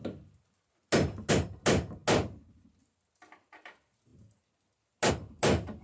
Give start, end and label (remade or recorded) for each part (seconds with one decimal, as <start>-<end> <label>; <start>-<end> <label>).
0.0-5.8 recorded